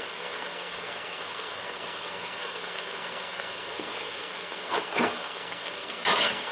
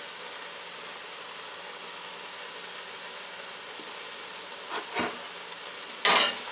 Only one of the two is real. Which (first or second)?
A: second